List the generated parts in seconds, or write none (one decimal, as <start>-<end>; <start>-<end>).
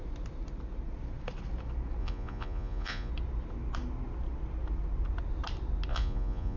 2.0-3.1; 5.9-6.6